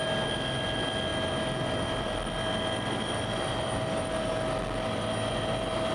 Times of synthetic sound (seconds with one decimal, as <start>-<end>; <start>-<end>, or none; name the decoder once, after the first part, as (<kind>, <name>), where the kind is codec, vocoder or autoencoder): 1.1-4.3 (vocoder, BigVGAN v2)